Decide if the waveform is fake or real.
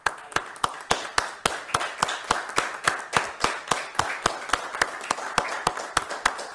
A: real